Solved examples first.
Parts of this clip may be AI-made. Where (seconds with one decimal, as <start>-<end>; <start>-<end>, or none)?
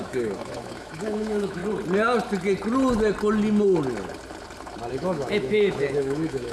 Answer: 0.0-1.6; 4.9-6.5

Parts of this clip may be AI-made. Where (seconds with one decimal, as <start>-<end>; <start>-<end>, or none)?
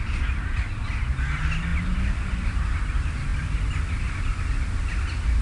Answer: none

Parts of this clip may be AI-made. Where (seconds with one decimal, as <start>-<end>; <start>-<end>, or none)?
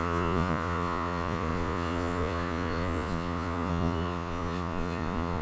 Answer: 0.0-5.4